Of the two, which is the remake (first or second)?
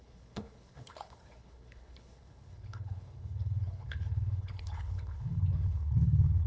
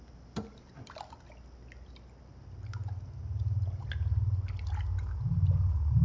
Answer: first